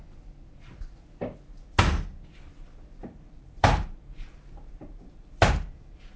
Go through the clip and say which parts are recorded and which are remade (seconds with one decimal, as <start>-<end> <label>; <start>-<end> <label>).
0.0-2.3 recorded; 2.3-5.5 remade; 5.5-6.2 recorded